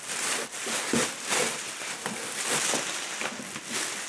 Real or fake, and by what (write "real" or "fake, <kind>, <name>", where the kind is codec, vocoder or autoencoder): real